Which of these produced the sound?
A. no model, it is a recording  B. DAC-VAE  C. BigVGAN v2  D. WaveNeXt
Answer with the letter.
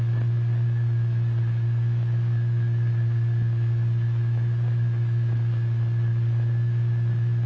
A